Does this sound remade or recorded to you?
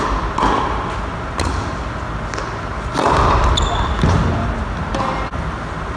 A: recorded